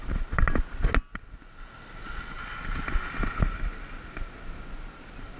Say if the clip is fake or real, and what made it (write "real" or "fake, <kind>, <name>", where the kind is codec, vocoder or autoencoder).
real